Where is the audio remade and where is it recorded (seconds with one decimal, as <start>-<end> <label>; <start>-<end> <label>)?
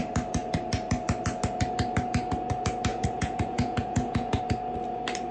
0.0-2.9 recorded; 2.9-4.4 remade; 4.4-5.3 recorded